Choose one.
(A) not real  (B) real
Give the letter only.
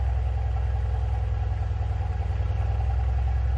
B